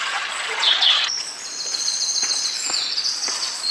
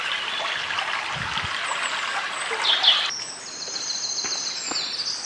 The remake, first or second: first